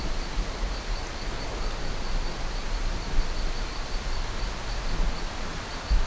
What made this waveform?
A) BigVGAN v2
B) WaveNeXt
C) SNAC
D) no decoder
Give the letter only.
D